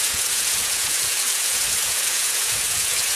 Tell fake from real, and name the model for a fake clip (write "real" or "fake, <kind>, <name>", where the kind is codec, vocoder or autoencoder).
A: fake, vocoder, Vocos